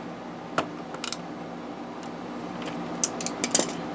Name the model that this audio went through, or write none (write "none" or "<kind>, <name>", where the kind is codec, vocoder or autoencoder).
none